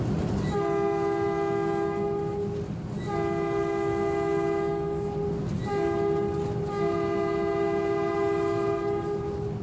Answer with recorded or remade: recorded